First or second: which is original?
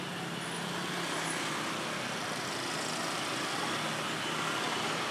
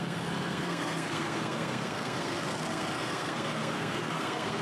first